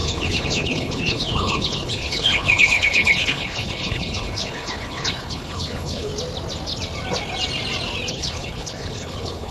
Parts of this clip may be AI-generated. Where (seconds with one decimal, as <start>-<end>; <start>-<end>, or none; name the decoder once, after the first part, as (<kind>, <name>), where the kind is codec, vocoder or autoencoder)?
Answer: 0.0-6.1 (codec, HILCodec); 8.1-9.5